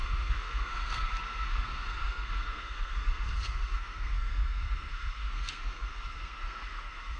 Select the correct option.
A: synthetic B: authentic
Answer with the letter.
A